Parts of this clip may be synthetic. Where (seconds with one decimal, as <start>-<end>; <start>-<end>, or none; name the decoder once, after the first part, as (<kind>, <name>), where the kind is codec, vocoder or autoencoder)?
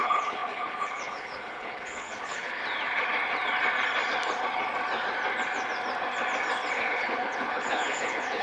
0.0-2.6 (codec, HILCodec); 6.7-8.4